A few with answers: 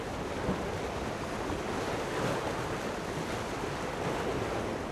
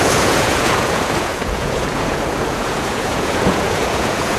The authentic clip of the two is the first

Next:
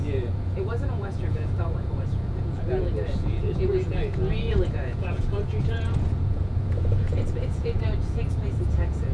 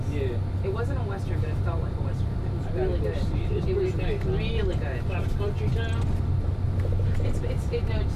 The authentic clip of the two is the second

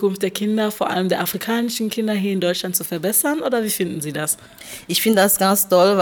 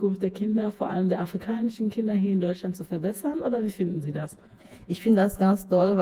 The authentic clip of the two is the first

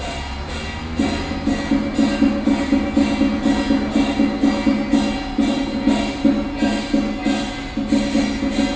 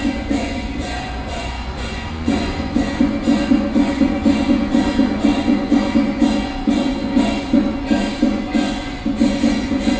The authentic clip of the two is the first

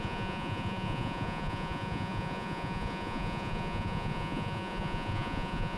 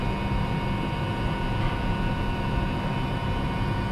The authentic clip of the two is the second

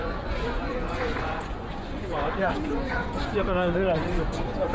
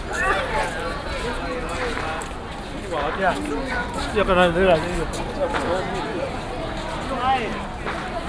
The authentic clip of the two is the second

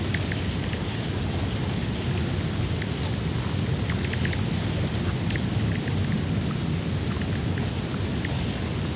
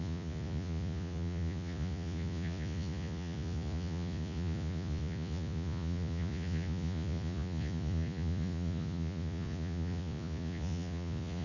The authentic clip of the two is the first